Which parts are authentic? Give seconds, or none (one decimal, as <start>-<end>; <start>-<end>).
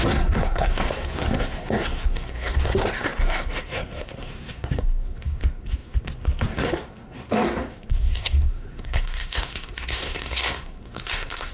none